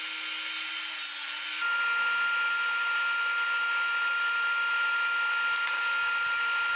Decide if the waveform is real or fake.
real